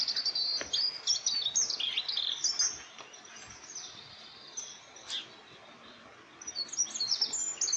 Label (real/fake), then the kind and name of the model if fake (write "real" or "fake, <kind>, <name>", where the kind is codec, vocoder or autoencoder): real